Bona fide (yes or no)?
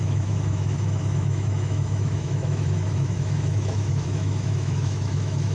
no